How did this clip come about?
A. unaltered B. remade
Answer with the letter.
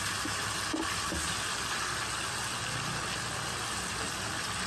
A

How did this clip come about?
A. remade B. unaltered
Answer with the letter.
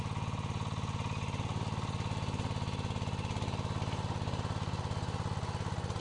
B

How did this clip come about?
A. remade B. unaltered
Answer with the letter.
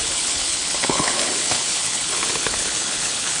A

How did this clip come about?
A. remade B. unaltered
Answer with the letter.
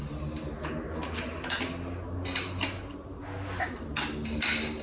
B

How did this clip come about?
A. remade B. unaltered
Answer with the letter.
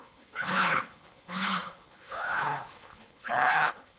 A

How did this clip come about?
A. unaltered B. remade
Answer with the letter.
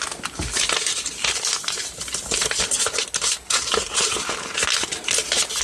A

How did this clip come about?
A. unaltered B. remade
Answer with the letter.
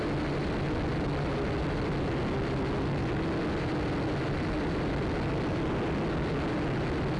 A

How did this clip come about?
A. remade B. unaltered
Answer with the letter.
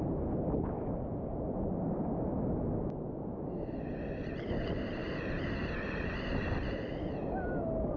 B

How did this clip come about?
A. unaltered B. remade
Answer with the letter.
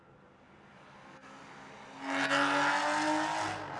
A